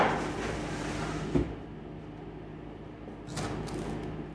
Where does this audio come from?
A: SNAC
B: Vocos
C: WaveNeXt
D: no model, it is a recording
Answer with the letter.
D